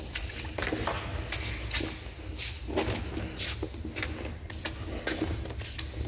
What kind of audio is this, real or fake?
real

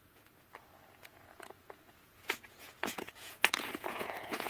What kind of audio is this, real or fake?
fake